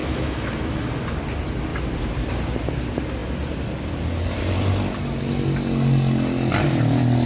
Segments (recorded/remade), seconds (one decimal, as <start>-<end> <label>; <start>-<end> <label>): 0.0-0.5 remade; 0.5-7.3 recorded